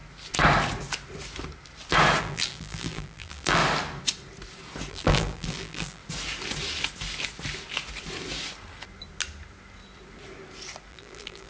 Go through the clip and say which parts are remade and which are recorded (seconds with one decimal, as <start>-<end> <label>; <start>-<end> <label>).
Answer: 0.0-2.2 recorded; 2.2-3.6 remade; 3.6-4.9 recorded; 4.9-6.0 remade; 6.0-10.9 recorded; 10.9-11.5 remade